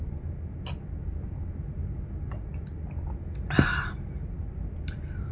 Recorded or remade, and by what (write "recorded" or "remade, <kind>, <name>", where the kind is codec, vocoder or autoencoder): recorded